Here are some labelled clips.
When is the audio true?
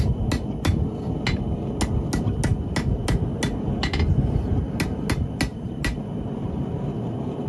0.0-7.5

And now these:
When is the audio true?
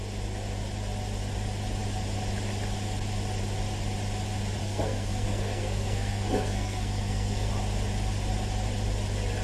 0.0-4.6; 7.5-9.4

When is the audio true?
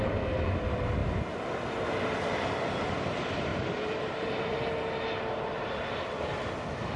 0.0-3.5; 4.7-7.0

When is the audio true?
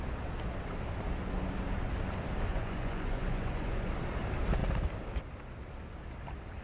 0.0-2.5; 3.9-6.6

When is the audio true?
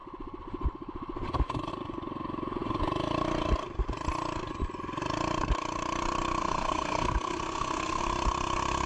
0.0-6.4; 8.0-8.9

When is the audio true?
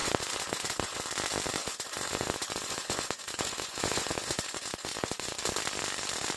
1.0-1.6; 5.4-6.4